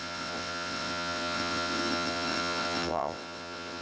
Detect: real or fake fake